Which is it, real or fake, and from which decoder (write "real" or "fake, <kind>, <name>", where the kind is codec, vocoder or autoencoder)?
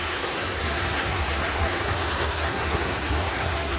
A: fake, codec, SNAC